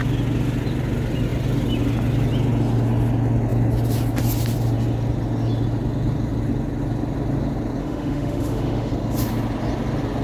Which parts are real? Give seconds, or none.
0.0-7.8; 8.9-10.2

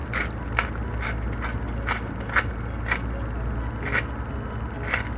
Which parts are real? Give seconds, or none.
0.0-5.2

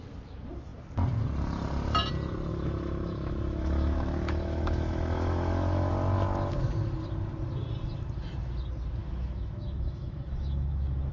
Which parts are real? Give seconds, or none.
0.0-2.5; 5.9-9.0